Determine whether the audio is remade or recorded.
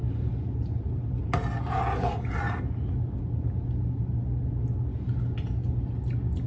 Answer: recorded